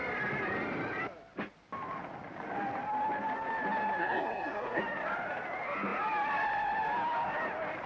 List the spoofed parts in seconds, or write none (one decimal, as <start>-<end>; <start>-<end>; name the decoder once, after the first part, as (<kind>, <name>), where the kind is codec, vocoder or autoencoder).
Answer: 4.0-4.8 (codec, SNAC)